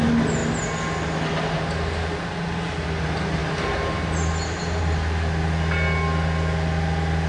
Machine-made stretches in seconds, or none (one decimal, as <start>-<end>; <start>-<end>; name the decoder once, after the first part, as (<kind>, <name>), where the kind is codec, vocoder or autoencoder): none